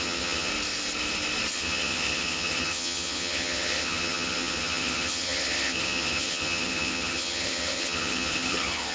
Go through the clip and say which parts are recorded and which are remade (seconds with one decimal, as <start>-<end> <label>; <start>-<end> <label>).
0.0-0.5 remade; 0.5-1.5 recorded; 1.5-8.9 remade